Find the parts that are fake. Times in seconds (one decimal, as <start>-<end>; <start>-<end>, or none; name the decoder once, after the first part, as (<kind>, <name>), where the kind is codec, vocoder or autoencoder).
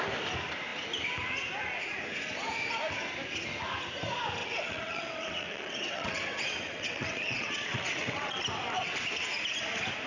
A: 4.4-8.4 (vocoder, WaveNeXt)